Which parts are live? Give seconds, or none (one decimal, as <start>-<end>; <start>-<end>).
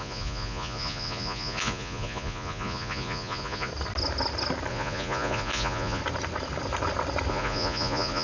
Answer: 3.7-4.7; 6.0-7.3